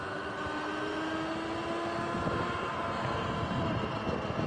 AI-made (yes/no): no